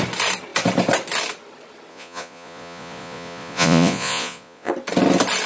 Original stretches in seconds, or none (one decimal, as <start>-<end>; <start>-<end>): 0.0-1.9; 4.7-5.5